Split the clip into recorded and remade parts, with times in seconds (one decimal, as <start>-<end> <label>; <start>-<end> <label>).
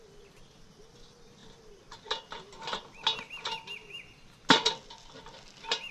0.0-5.9 recorded